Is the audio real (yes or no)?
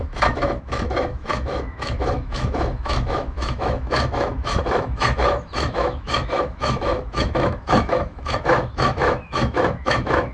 no